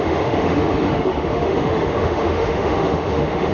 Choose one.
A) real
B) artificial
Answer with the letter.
B